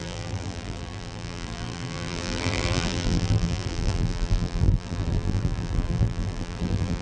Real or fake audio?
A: fake